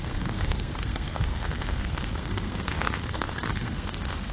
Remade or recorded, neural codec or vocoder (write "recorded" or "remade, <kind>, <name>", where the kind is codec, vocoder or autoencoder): remade, codec, SNAC